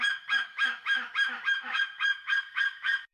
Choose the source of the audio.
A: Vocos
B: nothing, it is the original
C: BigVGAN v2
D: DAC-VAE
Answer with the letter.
D